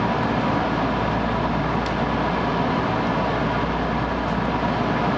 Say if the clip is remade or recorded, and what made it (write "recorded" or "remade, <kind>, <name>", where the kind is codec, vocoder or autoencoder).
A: recorded